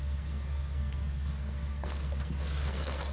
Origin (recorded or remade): remade